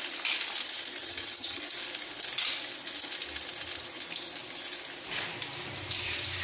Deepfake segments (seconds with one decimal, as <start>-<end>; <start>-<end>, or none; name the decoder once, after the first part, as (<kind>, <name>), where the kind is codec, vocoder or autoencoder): 1.0-1.6 (vocoder, HiFi-GAN)